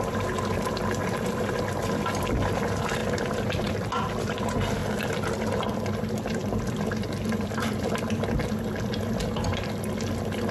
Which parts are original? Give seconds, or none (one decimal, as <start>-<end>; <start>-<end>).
0.0-10.5